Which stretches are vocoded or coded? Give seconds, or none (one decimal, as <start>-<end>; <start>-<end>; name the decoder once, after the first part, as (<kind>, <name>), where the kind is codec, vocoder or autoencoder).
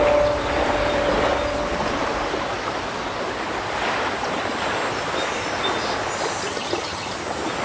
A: 6.5-7.1 (vocoder, HiFi-GAN)